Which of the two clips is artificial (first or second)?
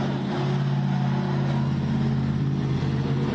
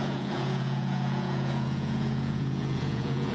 second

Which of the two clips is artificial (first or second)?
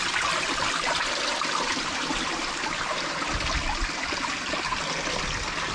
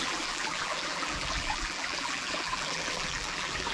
second